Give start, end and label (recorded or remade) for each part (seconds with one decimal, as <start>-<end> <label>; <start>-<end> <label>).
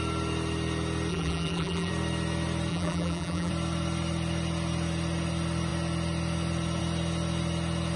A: 0.0-1.1 recorded; 1.1-1.9 remade; 1.9-2.7 recorded; 2.7-3.5 remade; 3.5-8.0 recorded